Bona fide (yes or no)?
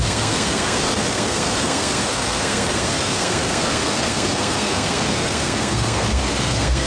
no